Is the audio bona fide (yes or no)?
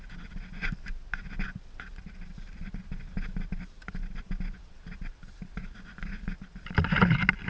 yes